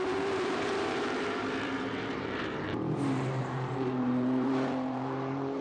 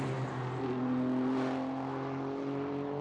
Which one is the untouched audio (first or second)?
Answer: second